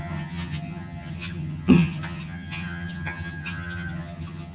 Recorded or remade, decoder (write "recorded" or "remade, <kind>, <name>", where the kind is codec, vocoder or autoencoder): remade, vocoder, HiFi-GAN